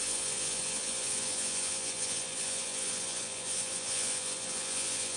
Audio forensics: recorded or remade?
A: remade